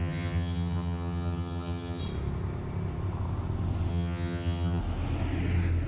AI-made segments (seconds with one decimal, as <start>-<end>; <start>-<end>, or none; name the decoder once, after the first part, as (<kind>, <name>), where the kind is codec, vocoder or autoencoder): 0.0-2.0 (vocoder, HiFi-GAN); 3.9-4.8